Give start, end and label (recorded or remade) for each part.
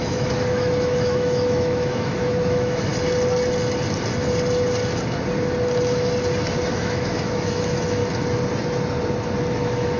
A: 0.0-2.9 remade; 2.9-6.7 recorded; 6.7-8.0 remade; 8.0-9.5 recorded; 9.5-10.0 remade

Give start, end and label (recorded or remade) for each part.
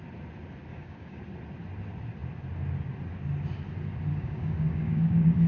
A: 0.0-0.7 recorded; 0.7-1.2 remade; 1.2-4.1 recorded; 4.1-5.5 remade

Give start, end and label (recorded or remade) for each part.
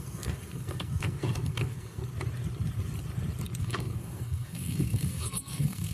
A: 0.0-2.0 remade; 2.0-3.6 recorded; 3.6-5.9 remade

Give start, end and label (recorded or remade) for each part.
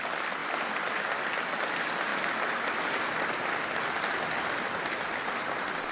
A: 0.0-5.9 recorded